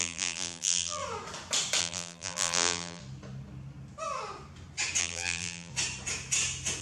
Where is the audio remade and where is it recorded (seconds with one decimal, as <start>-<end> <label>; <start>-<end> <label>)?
0.0-1.0 remade; 1.0-1.8 recorded; 1.8-3.0 remade; 3.0-5.0 recorded; 5.0-5.7 remade; 5.7-6.8 recorded